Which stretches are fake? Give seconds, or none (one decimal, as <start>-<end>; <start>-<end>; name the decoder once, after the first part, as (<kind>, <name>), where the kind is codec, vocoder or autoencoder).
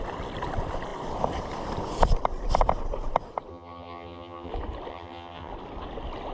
3.5-4.5 (vocoder, HiFi-GAN); 4.9-5.5